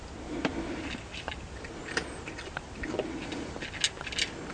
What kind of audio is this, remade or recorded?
recorded